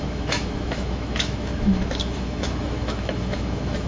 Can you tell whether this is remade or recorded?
remade